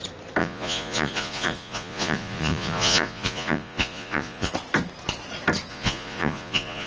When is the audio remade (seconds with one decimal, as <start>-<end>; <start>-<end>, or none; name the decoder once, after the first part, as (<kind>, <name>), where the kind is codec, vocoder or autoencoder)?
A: 0.4-4.5 (vocoder, Vocos); 5.7-6.9